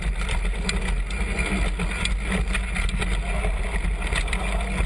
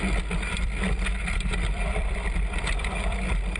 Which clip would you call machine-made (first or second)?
second